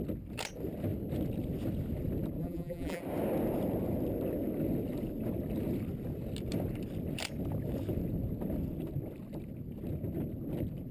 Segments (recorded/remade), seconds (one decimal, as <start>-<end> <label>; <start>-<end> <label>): 0.0-2.4 recorded; 2.4-3.0 remade; 3.0-10.9 recorded